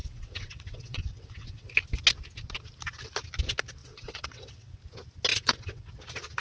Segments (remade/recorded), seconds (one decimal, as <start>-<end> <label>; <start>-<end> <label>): 0.0-1.7 remade; 1.7-3.8 recorded; 3.8-4.8 remade; 4.8-5.3 recorded; 5.3-5.9 remade; 5.9-6.4 recorded

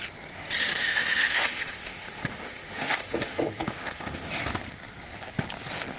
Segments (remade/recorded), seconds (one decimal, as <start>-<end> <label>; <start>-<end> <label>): 0.0-0.7 recorded; 0.7-4.3 remade; 4.3-6.0 recorded

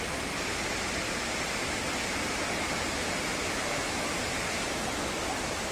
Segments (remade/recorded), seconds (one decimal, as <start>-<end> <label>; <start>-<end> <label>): 0.0-3.4 recorded; 3.4-4.1 remade; 4.1-5.7 recorded

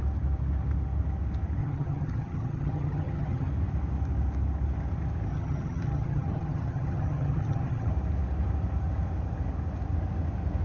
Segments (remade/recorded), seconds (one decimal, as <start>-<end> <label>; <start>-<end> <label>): 0.0-1.6 recorded; 1.6-3.5 remade; 3.5-5.3 recorded; 5.3-7.9 remade; 7.9-10.6 recorded